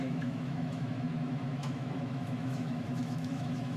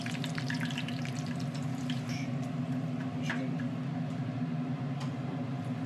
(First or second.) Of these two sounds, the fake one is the first